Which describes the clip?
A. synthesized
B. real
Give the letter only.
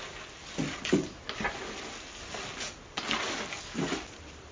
B